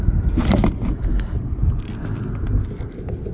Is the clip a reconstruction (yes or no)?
no